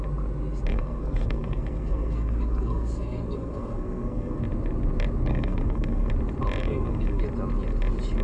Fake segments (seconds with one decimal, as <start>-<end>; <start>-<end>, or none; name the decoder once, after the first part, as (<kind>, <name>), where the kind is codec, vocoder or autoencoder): 0.7-4.4 (codec, SNAC); 5.3-6.1; 6.6-7.2